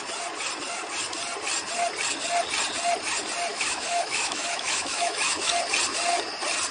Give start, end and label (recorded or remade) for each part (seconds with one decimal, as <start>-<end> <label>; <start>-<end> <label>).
0.0-3.5 recorded; 3.5-5.5 remade; 5.5-6.7 recorded